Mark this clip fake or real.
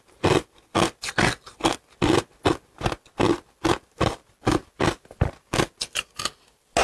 real